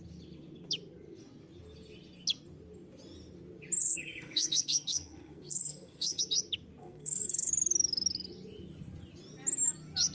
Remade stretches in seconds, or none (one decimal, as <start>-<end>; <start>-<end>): 3.8-6.2; 6.8-7.5